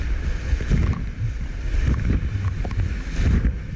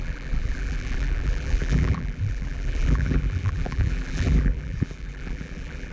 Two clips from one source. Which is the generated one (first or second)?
second